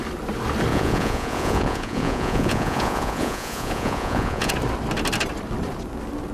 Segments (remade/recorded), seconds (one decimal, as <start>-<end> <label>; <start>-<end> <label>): 0.0-0.7 recorded; 0.7-4.5 remade; 4.5-6.3 recorded